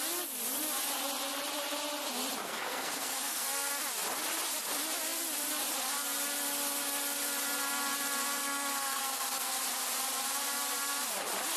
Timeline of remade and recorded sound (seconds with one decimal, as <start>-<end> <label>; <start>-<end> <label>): 0.0-2.4 recorded; 2.4-3.7 remade; 3.7-8.4 recorded; 8.4-9.6 remade; 9.6-11.6 recorded